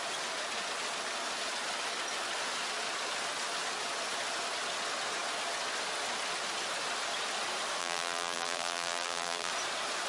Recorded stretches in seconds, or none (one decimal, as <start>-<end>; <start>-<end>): 0.0-7.8; 9.5-10.1